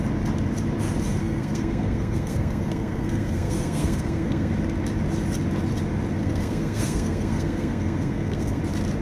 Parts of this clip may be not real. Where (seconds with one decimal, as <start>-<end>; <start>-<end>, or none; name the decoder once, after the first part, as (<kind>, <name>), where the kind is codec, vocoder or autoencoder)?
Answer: 1.2-4.5 (codec, SNAC); 6.2-8.6